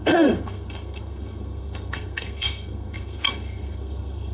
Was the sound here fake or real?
fake